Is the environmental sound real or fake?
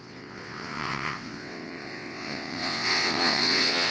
fake